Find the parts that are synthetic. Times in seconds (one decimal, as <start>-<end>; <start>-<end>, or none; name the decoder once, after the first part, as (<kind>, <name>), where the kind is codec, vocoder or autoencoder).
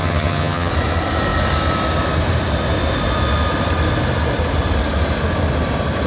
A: 0.0-0.7 (vocoder, HiFi-GAN)